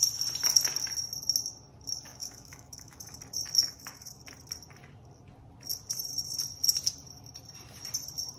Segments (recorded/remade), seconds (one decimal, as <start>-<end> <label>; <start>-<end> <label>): 0.0-2.1 recorded; 2.1-3.2 remade; 3.2-3.6 recorded; 3.6-4.2 remade; 4.2-8.4 recorded